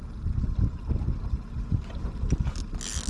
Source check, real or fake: real